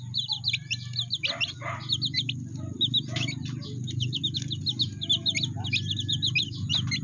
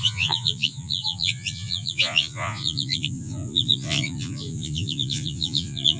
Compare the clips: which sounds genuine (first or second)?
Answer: first